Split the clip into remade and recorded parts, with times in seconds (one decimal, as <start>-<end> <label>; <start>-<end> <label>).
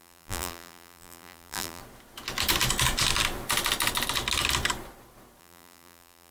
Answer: 0.0-1.8 remade; 1.8-5.4 recorded; 5.4-6.3 remade